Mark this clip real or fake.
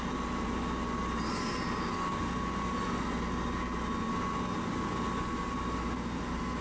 real